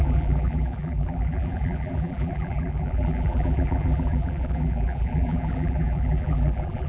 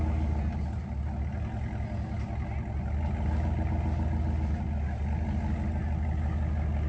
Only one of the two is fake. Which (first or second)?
first